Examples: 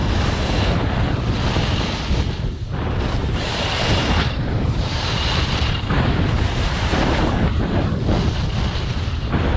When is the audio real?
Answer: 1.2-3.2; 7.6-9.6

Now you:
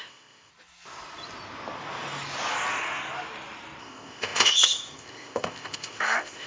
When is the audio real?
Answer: 0.5-3.8